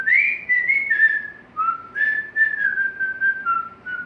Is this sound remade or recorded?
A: recorded